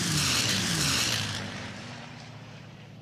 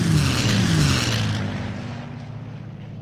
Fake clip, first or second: first